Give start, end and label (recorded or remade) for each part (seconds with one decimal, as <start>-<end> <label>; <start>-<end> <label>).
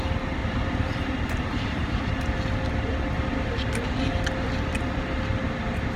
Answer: 0.0-0.4 recorded; 0.4-2.0 remade; 2.0-6.0 recorded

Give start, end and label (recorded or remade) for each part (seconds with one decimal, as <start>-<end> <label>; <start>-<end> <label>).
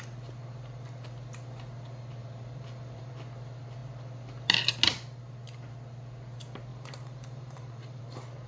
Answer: 0.0-2.2 recorded; 2.2-3.1 remade; 3.1-6.7 recorded; 6.7-8.0 remade; 8.0-8.5 recorded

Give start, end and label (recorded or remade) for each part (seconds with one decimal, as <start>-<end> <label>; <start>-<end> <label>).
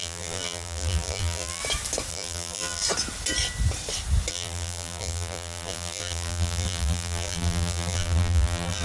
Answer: 0.0-1.6 remade; 1.6-2.1 recorded; 2.1-2.8 remade; 2.8-4.3 recorded; 4.3-8.8 remade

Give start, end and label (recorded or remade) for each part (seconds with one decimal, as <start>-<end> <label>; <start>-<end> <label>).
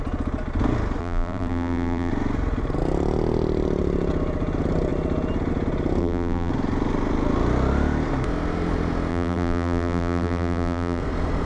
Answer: 0.0-1.0 recorded; 1.0-2.1 remade; 2.1-6.0 recorded; 6.0-6.5 remade; 6.5-9.1 recorded; 9.1-11.0 remade; 11.0-11.5 recorded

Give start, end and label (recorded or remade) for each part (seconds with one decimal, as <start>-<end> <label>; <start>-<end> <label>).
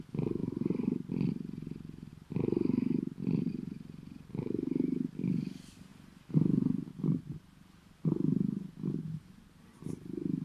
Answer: 0.0-0.4 recorded; 0.4-1.1 remade; 1.1-10.4 recorded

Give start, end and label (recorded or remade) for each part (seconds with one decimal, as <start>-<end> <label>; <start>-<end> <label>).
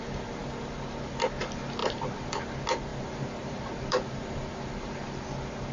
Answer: 0.0-1.8 recorded; 1.8-2.4 remade; 2.4-2.9 recorded; 2.9-5.2 remade; 5.2-5.7 recorded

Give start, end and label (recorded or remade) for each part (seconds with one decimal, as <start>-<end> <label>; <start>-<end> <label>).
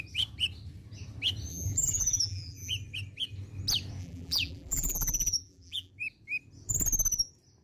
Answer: 0.0-1.5 recorded; 1.5-2.7 remade; 2.7-4.0 recorded; 4.0-5.9 remade; 5.9-7.6 recorded